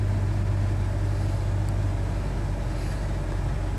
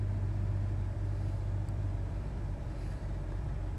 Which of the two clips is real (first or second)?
first